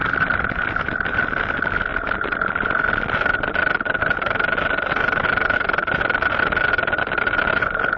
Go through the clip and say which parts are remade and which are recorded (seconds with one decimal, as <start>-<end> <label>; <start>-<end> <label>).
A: 0.0-8.0 recorded